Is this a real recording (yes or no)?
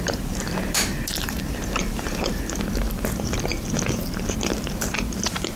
no